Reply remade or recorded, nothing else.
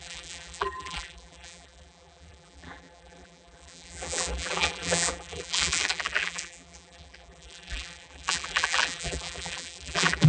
remade